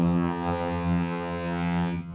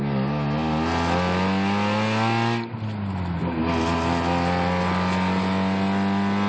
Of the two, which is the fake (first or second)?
first